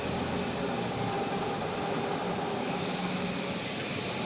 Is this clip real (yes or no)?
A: yes